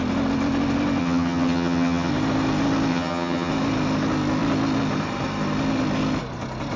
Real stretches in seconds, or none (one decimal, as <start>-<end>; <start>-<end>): 0.0-1.0; 2.1-2.9; 3.5-6.8